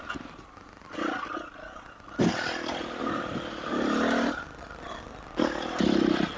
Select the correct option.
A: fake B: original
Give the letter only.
B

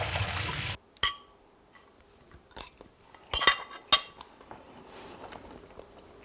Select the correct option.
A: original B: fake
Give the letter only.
A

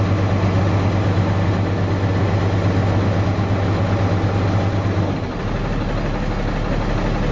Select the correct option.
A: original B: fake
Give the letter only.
A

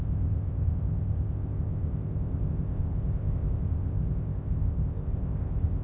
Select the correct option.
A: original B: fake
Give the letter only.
B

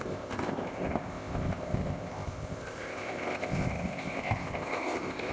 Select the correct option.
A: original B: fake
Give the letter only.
B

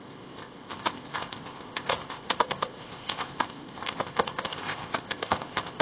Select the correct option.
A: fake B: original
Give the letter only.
A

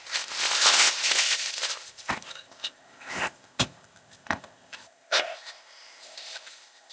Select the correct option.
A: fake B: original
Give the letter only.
A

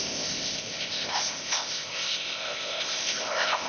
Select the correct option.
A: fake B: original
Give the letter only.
A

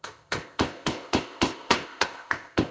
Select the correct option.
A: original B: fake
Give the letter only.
B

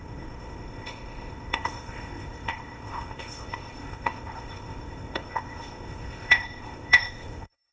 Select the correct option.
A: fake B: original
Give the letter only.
A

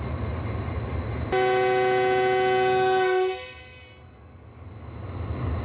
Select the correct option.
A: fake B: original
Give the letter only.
B